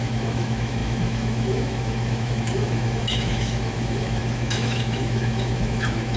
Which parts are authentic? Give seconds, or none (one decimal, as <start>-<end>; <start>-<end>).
none